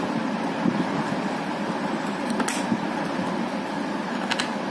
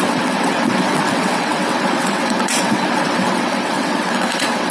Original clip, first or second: first